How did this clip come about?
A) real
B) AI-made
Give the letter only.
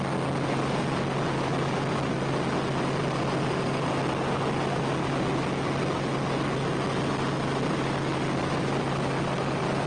A